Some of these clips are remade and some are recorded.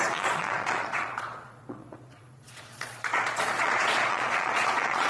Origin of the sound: remade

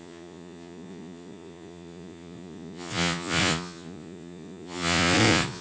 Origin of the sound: remade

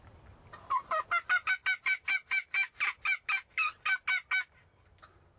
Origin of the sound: recorded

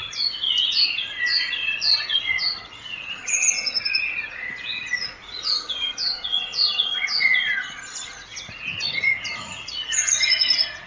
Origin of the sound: remade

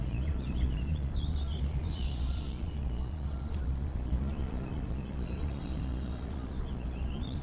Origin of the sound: remade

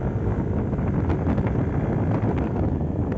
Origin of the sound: recorded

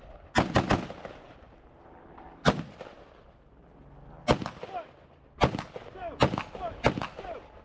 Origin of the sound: recorded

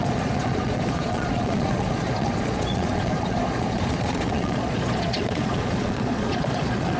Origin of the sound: remade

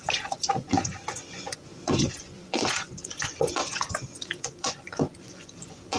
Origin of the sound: remade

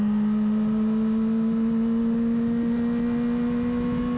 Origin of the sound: recorded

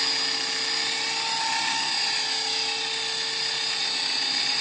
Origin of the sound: recorded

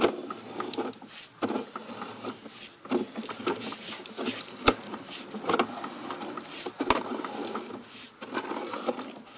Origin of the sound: recorded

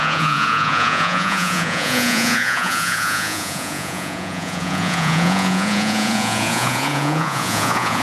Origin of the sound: remade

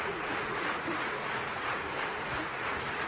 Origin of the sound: remade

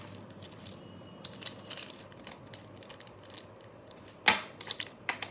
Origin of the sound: recorded